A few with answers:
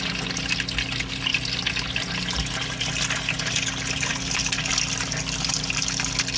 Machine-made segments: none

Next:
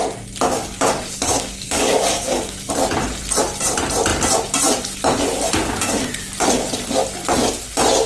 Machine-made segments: 0.6-2.7 (codec, DAC)